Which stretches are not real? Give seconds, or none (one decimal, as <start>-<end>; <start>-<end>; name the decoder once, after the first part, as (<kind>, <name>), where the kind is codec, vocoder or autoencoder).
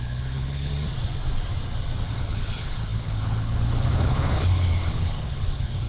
0.0-0.7 (codec, HILCodec); 2.0-5.9